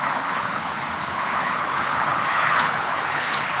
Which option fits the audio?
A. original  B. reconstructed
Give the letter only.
B